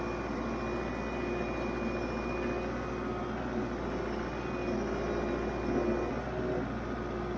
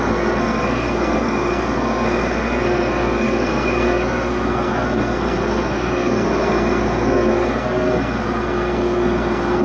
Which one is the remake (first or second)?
second